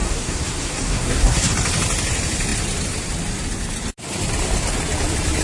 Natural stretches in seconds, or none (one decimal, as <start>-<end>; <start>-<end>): 1.5-5.4